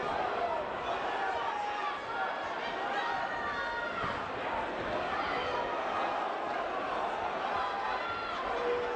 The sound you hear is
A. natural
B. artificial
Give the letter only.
A